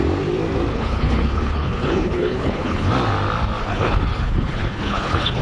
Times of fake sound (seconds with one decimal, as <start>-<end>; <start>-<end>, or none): 0.7-2.9; 3.6-5.4

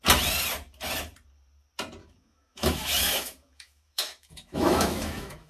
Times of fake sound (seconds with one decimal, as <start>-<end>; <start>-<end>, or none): 2.0-5.5

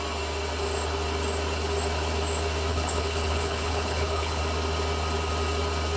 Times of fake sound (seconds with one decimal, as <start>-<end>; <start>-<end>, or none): 2.7-4.4

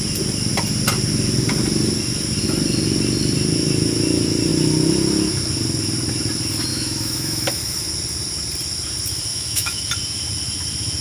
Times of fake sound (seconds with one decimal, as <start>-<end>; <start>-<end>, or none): 6.7-7.9; 9.3-9.8

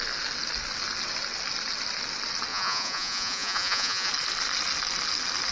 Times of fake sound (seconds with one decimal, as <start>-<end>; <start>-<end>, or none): 2.5-4.1

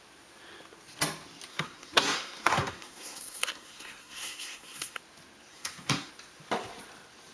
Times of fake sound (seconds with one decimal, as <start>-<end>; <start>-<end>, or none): 1.5-5.0; 5.5-6.1